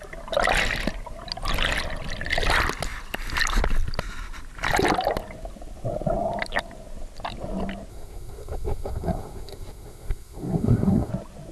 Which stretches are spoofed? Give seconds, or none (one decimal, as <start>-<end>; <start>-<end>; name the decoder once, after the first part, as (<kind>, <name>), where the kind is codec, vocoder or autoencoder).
7.9-11.1 (codec, SNAC)